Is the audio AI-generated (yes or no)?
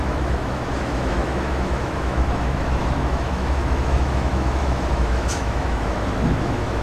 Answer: yes